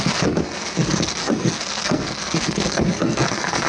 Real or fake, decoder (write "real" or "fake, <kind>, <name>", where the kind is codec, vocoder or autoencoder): fake, codec, SNAC